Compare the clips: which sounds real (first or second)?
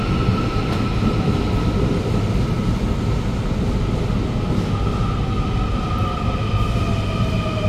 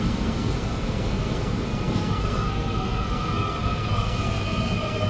first